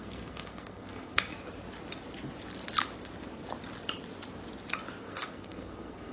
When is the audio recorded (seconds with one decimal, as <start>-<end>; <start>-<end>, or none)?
1.3-5.0